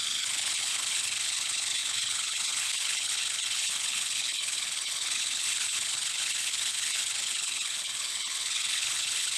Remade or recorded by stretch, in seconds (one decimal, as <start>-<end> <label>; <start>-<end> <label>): 0.0-9.4 remade